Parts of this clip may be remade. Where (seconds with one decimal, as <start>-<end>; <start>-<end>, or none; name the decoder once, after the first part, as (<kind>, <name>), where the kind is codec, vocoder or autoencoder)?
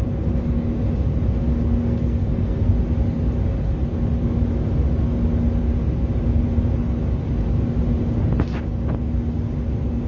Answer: 1.8-2.7 (codec, SNAC)